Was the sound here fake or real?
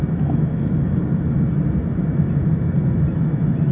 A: real